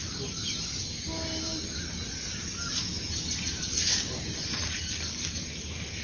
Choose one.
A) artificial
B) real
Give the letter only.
B